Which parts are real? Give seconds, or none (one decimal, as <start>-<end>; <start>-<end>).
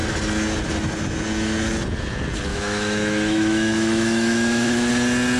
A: 0.0-2.5; 4.9-5.4